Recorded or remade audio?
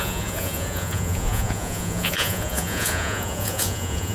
remade